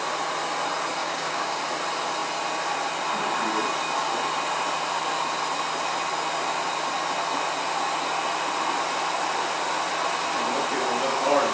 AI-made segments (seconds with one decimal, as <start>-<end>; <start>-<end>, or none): 1.0-1.6

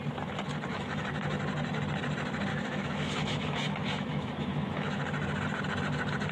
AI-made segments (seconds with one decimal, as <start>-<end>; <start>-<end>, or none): 0.7-1.4; 2.5-5.0